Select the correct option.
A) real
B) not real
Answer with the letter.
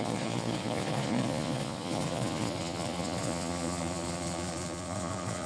B